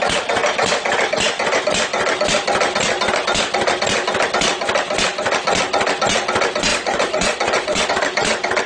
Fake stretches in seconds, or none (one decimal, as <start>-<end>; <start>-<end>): 6.7-7.9